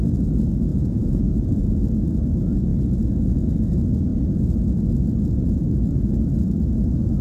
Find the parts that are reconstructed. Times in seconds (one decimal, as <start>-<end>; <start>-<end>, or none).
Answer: 0.7-1.8